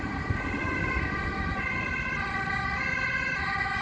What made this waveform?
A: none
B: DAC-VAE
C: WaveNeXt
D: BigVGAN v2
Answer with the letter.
A